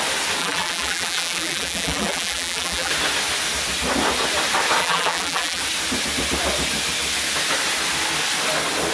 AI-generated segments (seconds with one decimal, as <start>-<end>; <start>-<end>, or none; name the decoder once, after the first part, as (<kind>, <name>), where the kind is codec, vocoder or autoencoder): 0.4-2.9 (vocoder, BigVGAN v2); 4.8-5.6